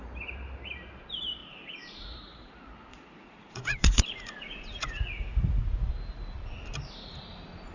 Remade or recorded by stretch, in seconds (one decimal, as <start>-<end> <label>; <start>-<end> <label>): 0.0-1.4 recorded; 1.4-2.5 remade; 2.5-2.9 recorded; 2.9-5.9 remade; 5.9-7.7 recorded